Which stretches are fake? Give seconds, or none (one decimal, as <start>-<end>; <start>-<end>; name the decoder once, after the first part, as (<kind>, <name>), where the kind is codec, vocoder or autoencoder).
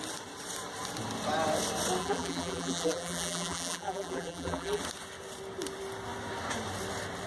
2.0-4.8 (vocoder, BigVGAN v2)